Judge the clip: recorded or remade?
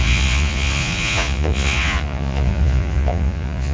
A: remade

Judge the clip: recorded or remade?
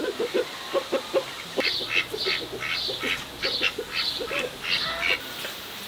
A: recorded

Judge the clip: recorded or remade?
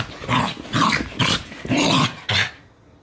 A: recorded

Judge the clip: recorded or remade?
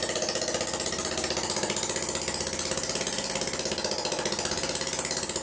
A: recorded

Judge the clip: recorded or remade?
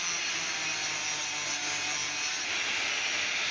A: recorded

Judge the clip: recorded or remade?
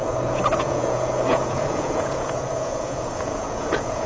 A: remade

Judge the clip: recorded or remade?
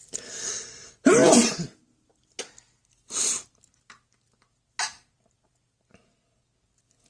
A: recorded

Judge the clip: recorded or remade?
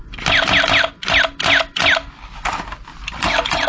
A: recorded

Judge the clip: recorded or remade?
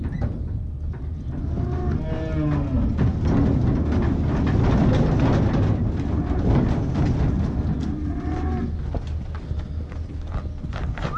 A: recorded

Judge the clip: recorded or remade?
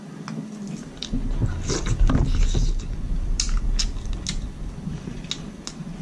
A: recorded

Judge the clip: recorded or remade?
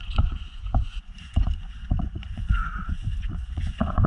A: remade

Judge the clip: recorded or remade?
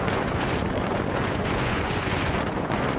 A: remade